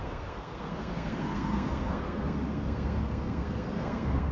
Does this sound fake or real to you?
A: fake